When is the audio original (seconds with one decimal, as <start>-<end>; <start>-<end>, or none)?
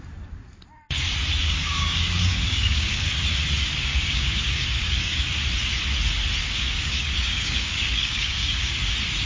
0.0-1.4; 3.1-3.9; 5.3-6.4; 8.8-9.3